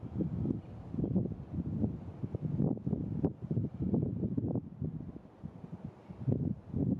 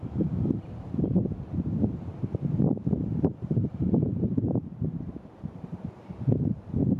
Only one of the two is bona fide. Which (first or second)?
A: first